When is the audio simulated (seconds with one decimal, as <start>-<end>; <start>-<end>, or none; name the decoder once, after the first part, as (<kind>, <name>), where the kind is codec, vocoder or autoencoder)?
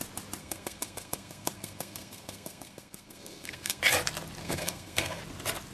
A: 0.4-3.8 (codec, SNAC); 4.4-5.2